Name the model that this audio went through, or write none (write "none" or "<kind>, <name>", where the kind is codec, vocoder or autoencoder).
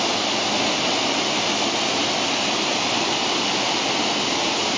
none